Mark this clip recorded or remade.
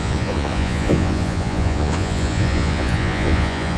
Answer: remade